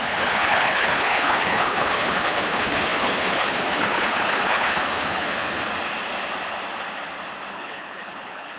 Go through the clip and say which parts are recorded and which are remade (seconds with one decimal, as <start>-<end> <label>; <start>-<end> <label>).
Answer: 0.0-5.7 remade; 5.7-7.5 recorded; 7.5-8.6 remade